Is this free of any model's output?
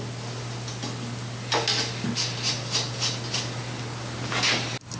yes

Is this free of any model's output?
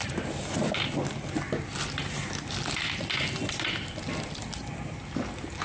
yes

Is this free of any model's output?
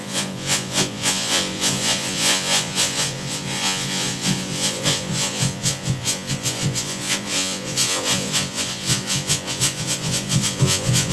no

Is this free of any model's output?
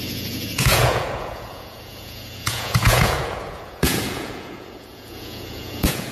no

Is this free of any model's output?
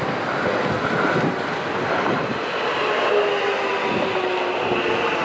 yes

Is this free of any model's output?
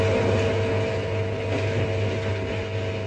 yes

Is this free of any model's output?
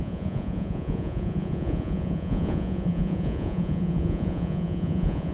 no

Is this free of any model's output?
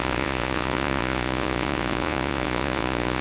no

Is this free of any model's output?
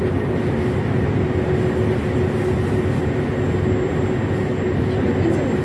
yes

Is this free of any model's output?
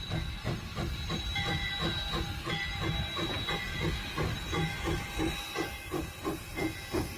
yes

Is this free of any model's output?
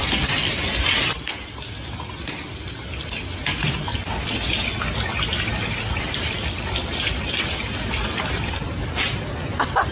yes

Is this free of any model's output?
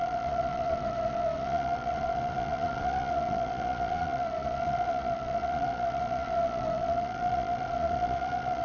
no